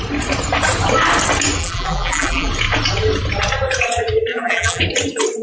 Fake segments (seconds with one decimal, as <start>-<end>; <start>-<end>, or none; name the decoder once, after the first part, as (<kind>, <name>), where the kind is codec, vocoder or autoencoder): 1.6-2.5 (vocoder, BigVGAN v2); 4.3-4.8